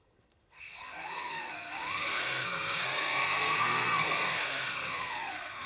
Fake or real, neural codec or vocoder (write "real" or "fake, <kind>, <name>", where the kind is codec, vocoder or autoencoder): fake, codec, SNAC